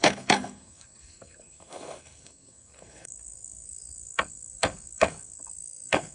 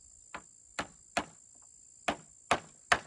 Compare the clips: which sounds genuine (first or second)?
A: second